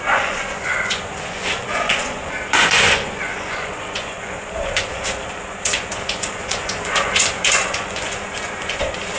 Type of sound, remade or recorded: remade